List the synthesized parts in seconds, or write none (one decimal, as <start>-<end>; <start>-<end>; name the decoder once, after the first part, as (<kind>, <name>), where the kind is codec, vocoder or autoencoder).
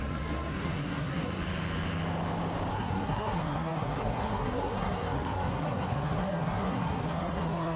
0.0-1.4 (codec, SNAC); 2.7-7.8